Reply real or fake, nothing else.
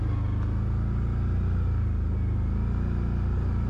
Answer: real